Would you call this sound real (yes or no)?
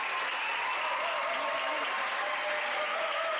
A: yes